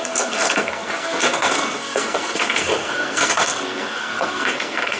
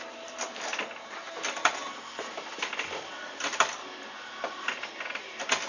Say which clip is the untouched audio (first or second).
second